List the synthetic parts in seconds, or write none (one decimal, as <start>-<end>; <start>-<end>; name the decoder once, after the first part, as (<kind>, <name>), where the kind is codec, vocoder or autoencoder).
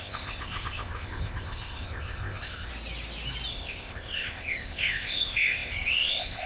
0.0-2.7 (codec, ZipCodec); 3.5-6.5